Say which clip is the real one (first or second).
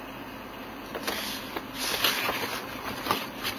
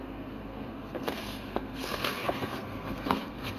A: first